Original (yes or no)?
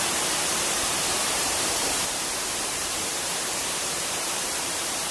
no